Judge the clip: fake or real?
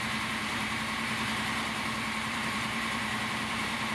fake